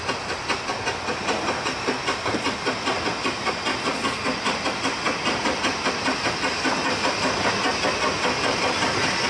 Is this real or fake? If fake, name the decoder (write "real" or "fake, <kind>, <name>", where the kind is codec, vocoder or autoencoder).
real